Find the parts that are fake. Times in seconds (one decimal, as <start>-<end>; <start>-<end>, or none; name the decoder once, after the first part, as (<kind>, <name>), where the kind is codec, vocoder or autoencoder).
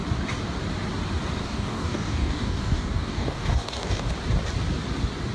1.4-4.1 (codec, DAC)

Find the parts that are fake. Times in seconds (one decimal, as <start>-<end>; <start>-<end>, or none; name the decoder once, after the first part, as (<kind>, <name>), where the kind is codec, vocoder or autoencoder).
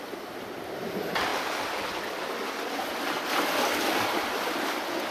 none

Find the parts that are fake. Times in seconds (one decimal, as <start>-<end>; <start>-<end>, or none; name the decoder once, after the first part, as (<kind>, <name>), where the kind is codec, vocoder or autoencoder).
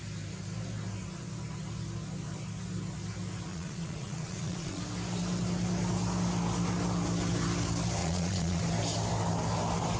3.5-4.8 (vocoder, Vocos); 8.0-8.6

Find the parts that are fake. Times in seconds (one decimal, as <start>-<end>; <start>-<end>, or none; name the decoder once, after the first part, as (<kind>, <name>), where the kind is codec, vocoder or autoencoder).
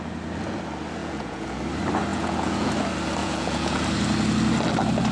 1.0-1.6 (vocoder, Vocos); 2.1-2.7; 3.2-3.8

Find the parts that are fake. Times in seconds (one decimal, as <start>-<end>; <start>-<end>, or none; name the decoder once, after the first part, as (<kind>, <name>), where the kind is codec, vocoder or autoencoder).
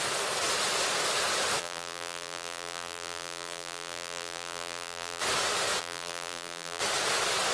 1.6-5.2 (vocoder, BigVGAN v2); 5.8-6.8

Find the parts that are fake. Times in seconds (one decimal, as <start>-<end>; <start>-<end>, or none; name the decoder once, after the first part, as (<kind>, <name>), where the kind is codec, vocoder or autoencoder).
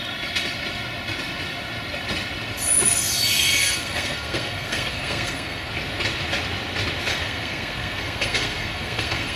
3.6-5.7 (codec, SNAC); 7.1-9.4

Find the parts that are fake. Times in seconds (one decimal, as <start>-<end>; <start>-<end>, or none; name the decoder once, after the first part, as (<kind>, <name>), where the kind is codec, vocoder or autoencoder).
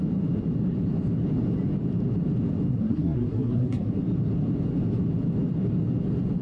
2.7-3.9 (codec, SNAC)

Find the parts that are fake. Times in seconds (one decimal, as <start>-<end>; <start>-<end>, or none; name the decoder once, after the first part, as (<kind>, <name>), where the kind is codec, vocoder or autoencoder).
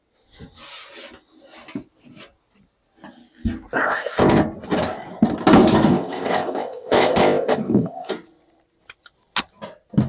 3.8-4.4 (codec, ZipCodec); 5.9-8.1